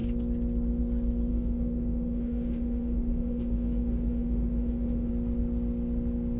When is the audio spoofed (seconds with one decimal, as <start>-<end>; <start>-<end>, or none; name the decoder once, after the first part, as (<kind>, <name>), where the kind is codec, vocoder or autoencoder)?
1.3-5.1 (autoencoder, DAC-VAE)